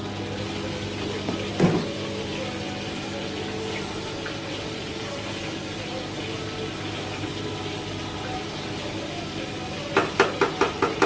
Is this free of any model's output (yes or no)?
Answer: yes